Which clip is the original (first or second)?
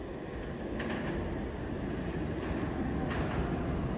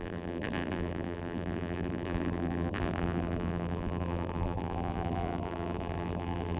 first